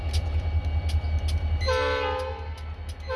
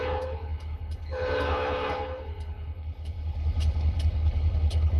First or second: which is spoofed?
second